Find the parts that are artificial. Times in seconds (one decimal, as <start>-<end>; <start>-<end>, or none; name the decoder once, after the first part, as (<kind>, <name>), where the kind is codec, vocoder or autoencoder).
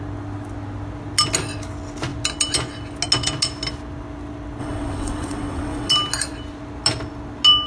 4.6-5.9 (vocoder, WaveNeXt)